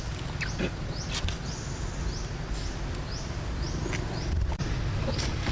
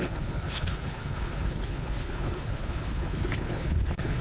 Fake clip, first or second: second